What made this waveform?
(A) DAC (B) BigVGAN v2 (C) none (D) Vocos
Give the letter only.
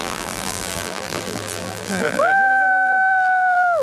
B